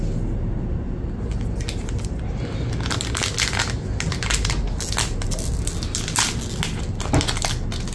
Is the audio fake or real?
real